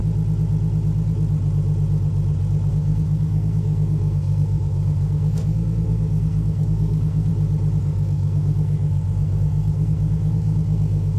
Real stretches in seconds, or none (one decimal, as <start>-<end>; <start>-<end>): 0.0-2.7; 7.3-7.8